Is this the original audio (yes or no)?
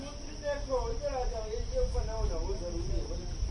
yes